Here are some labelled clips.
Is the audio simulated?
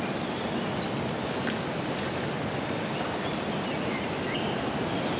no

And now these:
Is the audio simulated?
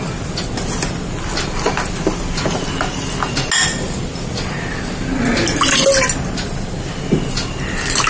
no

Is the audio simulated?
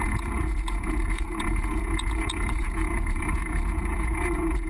yes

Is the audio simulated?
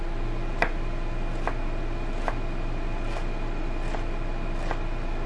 no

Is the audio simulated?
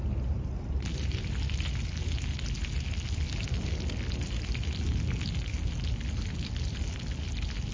no